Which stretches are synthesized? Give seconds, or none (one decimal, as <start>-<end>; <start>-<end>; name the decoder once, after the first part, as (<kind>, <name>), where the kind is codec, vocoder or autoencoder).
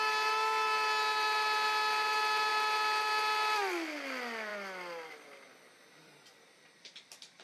none